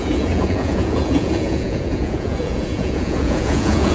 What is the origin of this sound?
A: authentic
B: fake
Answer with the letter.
B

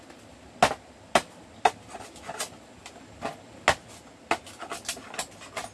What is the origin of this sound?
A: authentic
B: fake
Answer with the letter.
A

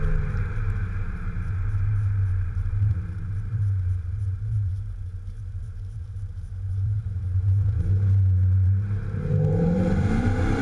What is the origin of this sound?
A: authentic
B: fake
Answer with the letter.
B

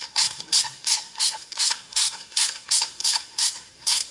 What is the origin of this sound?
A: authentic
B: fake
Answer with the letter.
B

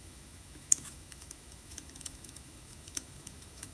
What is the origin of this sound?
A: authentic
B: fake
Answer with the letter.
B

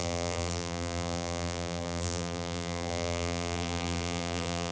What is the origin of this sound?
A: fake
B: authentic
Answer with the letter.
A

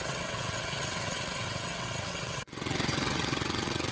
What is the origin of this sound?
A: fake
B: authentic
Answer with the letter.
A